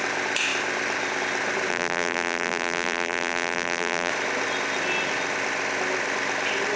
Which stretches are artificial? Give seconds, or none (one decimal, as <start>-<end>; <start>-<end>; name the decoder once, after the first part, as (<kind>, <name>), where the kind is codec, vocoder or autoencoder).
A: 1.7-4.1 (vocoder, BigVGAN v2)